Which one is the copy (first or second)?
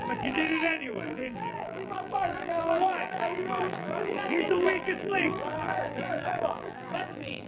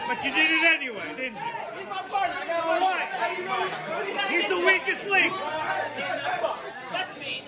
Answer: first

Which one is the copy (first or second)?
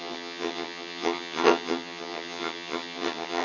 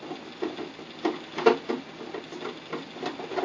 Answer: first